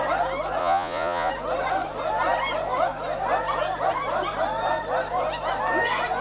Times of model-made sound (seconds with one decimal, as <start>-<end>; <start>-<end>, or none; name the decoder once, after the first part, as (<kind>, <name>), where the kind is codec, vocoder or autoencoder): 0.6-1.3 (vocoder, Vocos)

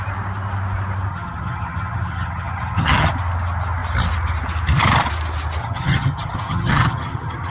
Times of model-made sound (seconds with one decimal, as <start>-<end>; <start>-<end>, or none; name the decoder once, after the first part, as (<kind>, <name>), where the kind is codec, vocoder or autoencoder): 1.1-3.1 (vocoder, HiFi-GAN); 5.6-7.5

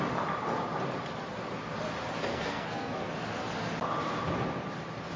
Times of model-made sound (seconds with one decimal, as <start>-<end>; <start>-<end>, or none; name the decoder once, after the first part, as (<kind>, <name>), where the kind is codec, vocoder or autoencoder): 2.3-3.1 (codec, SNAC)

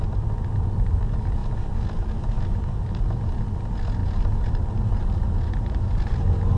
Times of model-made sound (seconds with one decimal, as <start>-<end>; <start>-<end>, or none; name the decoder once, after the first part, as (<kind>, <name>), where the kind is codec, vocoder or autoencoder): 4.0-5.5 (vocoder, BigVGAN v2)

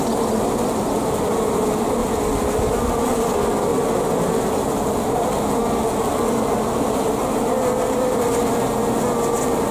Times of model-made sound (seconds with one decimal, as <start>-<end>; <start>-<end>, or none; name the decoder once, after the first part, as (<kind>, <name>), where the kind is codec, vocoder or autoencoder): none

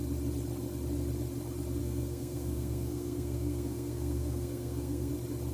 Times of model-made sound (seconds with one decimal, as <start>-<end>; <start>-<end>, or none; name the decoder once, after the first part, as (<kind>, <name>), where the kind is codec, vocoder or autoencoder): 1.8-5.1 (codec, SNAC)

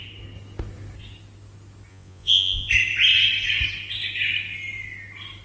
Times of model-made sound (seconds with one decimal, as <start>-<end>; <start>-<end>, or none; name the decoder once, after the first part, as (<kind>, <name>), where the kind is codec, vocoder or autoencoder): 1.9-2.7 (vocoder, Vocos)